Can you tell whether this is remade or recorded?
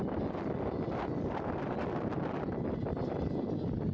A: recorded